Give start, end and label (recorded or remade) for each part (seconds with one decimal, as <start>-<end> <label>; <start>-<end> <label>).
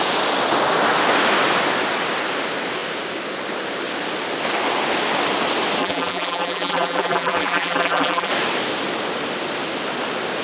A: 0.0-5.8 recorded; 5.8-8.3 remade; 8.3-10.4 recorded